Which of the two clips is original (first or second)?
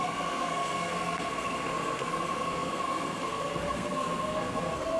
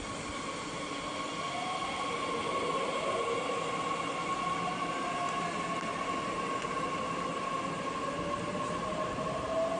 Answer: second